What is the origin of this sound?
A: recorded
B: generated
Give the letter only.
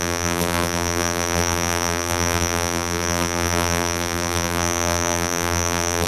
B